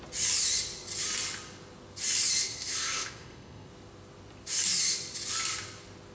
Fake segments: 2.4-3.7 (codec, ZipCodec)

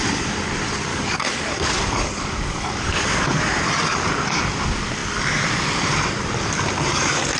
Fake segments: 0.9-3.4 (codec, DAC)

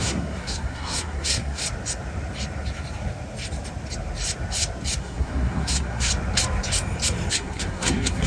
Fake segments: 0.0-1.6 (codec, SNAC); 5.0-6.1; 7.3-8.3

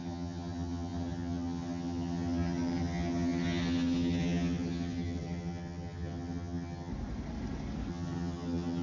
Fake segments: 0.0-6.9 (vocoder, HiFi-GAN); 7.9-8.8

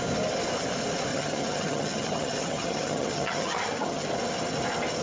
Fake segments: 1.1-4.1 (vocoder, HiFi-GAN)

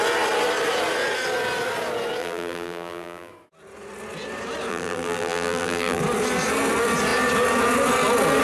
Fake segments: 2.2-3.3 (vocoder, BigVGAN v2); 4.7-6.0

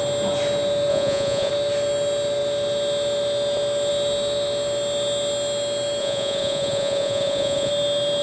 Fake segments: 0.9-1.5 (vocoder, Vocos); 6.0-7.7